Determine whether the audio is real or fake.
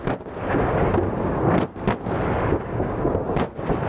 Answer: real